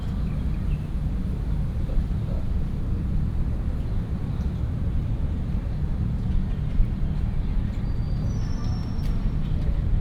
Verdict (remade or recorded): recorded